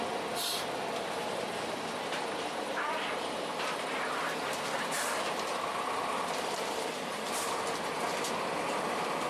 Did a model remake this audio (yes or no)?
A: yes